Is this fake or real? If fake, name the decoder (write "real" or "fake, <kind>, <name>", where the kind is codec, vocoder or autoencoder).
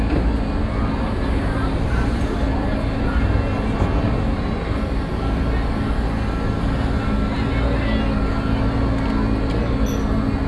real